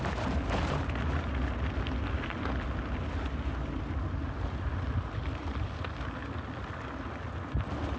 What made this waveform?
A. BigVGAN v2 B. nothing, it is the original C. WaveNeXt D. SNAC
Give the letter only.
B